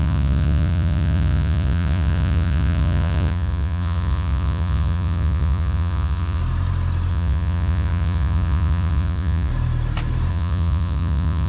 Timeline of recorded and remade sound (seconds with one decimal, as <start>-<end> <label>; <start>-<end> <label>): 0.0-6.4 remade; 6.4-7.1 recorded; 7.1-9.5 remade; 9.5-10.3 recorded; 10.3-11.5 remade